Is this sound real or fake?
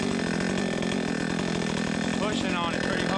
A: real